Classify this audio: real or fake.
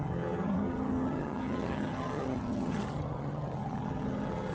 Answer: fake